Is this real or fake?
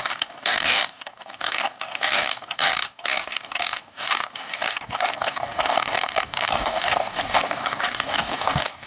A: fake